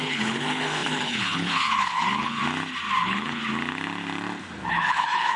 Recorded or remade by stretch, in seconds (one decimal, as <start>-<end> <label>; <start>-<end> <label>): 0.0-2.4 remade; 2.4-3.0 recorded; 3.0-3.4 remade; 3.4-4.7 recorded; 4.7-5.4 remade